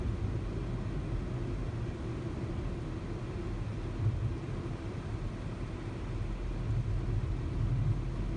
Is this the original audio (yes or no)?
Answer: yes